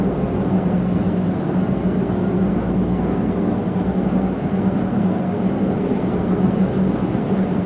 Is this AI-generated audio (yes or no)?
yes